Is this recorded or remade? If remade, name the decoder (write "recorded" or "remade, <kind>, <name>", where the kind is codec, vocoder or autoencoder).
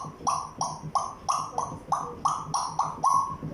recorded